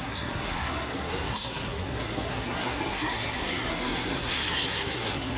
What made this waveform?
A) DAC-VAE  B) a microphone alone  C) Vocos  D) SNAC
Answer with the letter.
D